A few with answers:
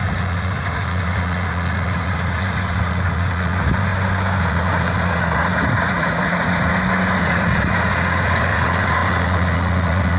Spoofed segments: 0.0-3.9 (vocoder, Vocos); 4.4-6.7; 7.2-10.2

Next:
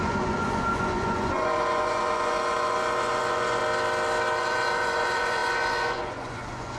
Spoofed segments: 0.0-3.6 (vocoder, Vocos); 4.4-6.8

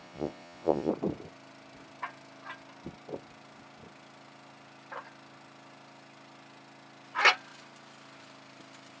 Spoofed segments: 0.0-0.9 (vocoder, Vocos)

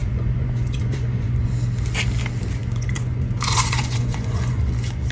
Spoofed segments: 0.0-1.5 (vocoder, Vocos); 2.6-5.1

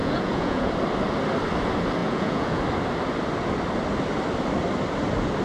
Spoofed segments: 0.0-0.7 (vocoder, Vocos); 2.0-2.6

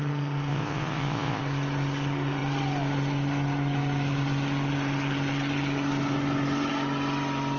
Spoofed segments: 0.5-1.4 (vocoder, Vocos)

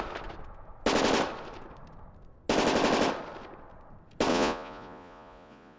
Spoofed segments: 4.3-5.8 (vocoder, Vocos)

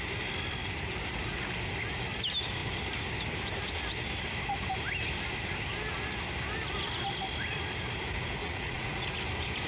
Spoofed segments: 8.4-9.0 (vocoder, Vocos)